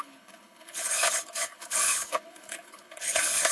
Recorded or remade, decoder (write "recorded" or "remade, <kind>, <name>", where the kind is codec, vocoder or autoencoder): remade, codec, HILCodec